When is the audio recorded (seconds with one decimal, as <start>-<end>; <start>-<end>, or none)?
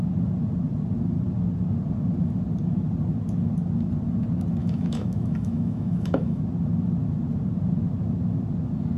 0.0-4.6; 6.4-9.0